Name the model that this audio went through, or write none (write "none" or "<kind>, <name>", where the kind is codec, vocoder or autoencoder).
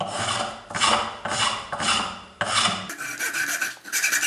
none